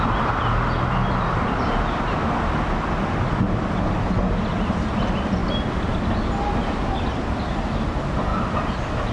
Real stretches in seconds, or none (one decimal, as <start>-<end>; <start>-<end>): 0.0-9.1